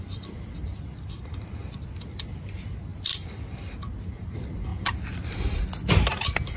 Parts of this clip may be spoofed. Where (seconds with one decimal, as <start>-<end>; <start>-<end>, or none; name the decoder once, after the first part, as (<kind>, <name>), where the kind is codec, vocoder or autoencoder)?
none